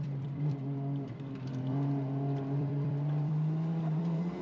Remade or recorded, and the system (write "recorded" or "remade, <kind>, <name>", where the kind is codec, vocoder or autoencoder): remade, vocoder, BigVGAN v2